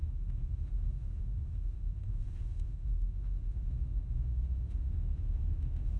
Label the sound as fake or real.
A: fake